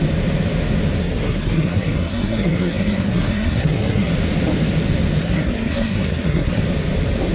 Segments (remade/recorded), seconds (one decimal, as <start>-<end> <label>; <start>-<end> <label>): 0.0-1.0 recorded; 1.0-4.1 remade; 4.1-5.2 recorded; 5.2-6.6 remade; 6.6-7.3 recorded